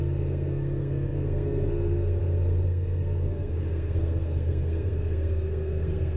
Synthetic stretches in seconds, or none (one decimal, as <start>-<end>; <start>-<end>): 0.0-6.2